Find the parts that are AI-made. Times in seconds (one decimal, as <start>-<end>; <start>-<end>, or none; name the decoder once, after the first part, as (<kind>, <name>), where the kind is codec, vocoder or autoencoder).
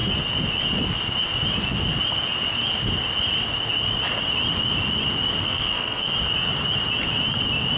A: 5.4-6.1 (codec, SNAC)